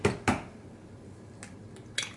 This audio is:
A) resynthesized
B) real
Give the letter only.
B